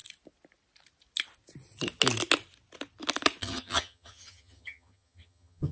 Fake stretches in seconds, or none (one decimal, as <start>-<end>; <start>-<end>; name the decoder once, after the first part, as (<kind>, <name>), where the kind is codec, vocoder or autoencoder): 3.4-5.7 (vocoder, HiFi-GAN)

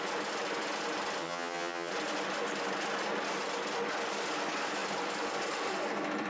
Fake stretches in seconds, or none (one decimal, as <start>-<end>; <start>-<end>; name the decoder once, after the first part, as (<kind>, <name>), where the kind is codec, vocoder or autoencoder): 1.2-1.9 (vocoder, HiFi-GAN)

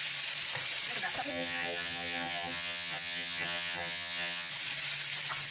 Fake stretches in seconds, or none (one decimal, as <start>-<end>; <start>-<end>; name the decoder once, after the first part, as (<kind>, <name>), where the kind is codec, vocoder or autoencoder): 1.3-4.5 (vocoder, HiFi-GAN)

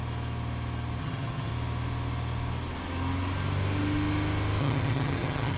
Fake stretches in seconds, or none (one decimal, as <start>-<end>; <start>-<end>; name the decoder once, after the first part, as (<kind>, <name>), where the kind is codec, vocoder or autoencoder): 1.0-1.5 (vocoder, HiFi-GAN); 4.6-5.6

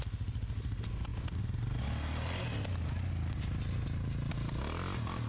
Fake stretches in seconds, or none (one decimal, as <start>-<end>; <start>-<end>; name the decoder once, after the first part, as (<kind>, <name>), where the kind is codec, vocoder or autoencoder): none

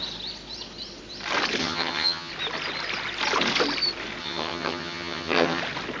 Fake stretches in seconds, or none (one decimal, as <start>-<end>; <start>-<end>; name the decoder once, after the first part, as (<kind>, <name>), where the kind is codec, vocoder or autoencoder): 1.6-2.3 (vocoder, HiFi-GAN); 4.2-5.6

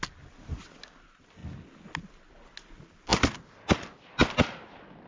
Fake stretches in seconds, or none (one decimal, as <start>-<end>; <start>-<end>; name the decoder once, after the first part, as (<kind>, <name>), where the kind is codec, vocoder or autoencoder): none